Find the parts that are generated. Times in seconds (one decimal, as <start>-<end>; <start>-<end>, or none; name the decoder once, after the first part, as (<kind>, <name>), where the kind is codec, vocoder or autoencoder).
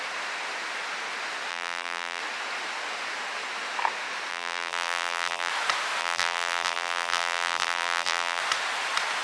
1.5-2.2 (vocoder, BigVGAN v2); 4.3-5.5; 6.0-8.4